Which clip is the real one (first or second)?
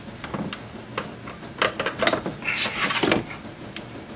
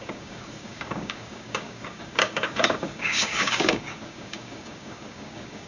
first